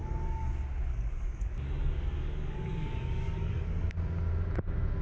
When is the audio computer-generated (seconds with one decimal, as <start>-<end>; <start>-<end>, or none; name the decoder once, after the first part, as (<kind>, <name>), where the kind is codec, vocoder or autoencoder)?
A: 0.0-0.5 (codec, DAC); 0.9-3.9